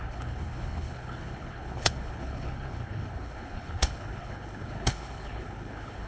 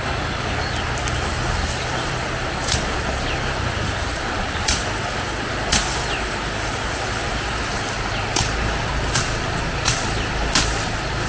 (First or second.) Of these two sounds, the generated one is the first